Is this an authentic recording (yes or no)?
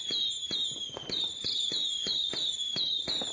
yes